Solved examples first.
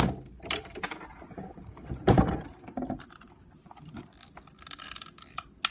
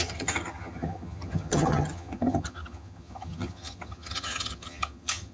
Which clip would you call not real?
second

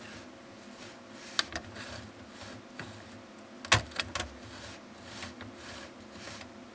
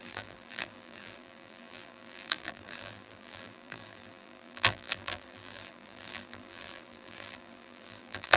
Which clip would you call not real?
second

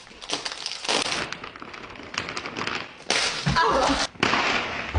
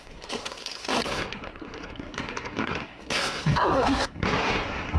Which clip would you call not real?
second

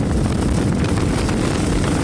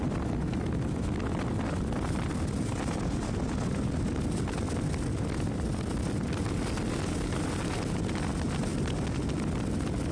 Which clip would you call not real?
first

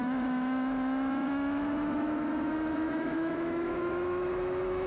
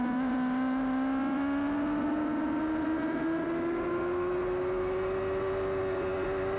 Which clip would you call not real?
first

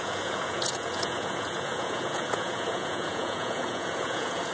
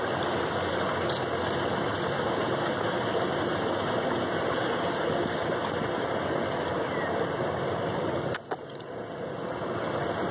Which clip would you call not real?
first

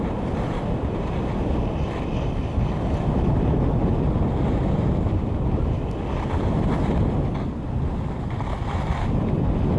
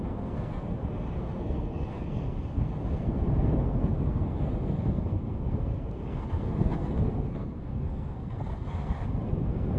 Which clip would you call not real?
second